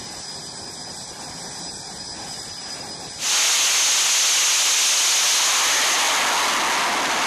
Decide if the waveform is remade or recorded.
recorded